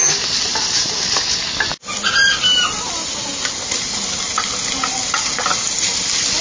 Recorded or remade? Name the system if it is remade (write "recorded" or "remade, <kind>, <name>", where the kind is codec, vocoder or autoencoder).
recorded